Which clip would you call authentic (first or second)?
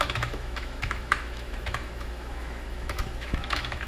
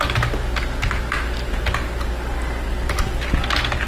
second